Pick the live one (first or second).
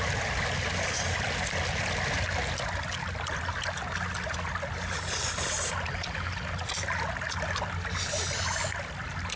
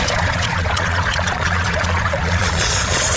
first